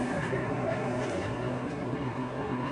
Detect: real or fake fake